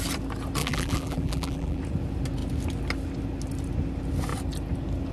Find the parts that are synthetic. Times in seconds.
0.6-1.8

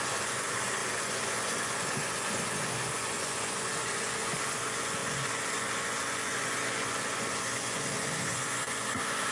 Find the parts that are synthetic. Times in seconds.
0.0-9.3

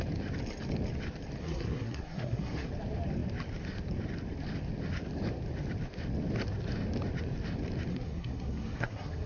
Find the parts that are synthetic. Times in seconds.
1.4-2.7; 7.9-9.3

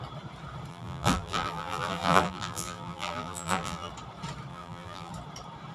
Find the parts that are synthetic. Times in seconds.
0.7-3.9; 4.5-5.1

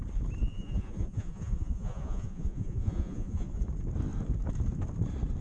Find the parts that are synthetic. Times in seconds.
0.4-3.6

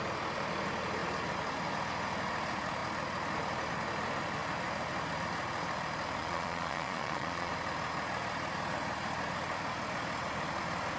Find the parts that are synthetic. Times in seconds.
6.2-7.5

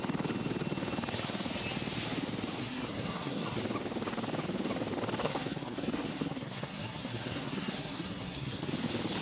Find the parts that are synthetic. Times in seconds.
2.6-3.6; 5.2-8.7